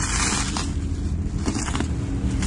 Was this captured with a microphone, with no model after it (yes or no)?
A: yes